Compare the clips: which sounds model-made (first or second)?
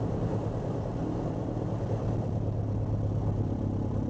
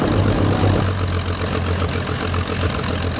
first